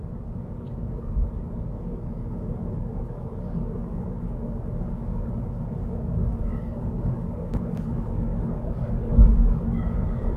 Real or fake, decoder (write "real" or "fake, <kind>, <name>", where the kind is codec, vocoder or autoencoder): fake, codec, DAC